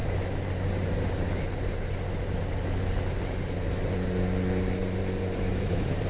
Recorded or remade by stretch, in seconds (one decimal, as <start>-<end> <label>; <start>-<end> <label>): 0.0-4.8 recorded; 4.8-6.1 remade